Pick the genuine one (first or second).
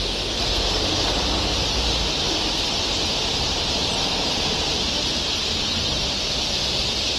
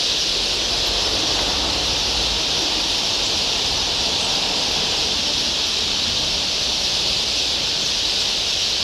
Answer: first